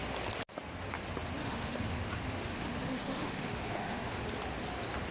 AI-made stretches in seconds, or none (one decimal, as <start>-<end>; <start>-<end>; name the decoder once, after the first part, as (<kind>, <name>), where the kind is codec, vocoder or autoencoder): 1.4-4.2 (autoencoder, DAC-VAE)